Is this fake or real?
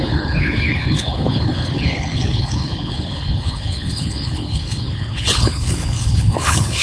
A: fake